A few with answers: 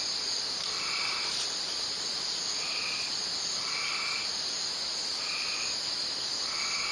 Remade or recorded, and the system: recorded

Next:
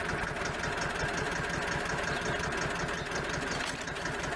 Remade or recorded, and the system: recorded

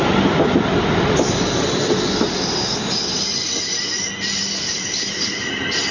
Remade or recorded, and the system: recorded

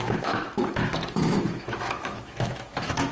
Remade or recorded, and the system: remade, autoencoder, DAC-VAE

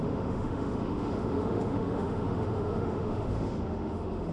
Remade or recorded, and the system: remade, autoencoder, DAC-VAE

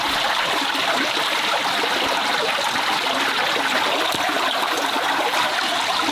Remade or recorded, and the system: recorded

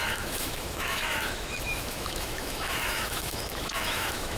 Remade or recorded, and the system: remade, autoencoder, DAC-VAE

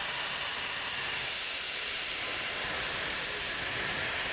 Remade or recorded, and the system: recorded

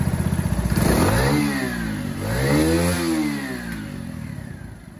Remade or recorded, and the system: recorded